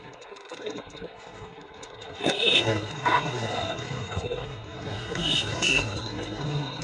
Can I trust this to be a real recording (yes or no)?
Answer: no